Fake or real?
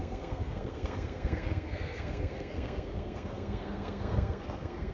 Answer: fake